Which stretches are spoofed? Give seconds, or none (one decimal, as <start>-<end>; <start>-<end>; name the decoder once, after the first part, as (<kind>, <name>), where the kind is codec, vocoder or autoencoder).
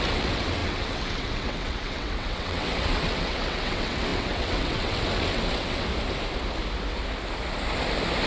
0.0-5.9 (vocoder, WaveNeXt)